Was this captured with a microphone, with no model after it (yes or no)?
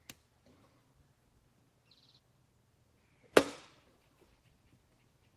yes